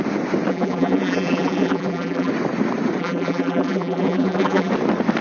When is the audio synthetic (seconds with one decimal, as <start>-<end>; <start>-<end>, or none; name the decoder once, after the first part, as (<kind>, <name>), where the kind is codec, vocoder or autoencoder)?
0.5-2.3 (vocoder, BigVGAN v2); 3.0-4.7